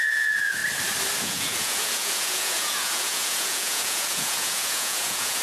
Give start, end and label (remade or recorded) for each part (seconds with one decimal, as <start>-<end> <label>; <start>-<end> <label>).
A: 0.0-0.6 remade; 0.6-1.2 recorded; 1.2-5.4 remade